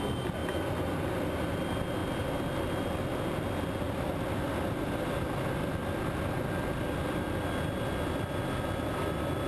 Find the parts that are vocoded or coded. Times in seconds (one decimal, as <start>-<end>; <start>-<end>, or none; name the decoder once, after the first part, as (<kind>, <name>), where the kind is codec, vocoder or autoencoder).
none